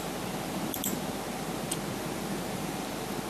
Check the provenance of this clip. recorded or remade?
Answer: recorded